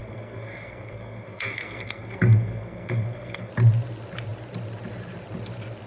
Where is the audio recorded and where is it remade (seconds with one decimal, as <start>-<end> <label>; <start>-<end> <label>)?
0.0-3.5 remade; 3.5-5.9 recorded